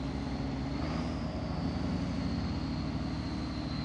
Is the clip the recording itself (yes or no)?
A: yes